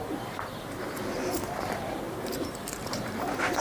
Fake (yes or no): yes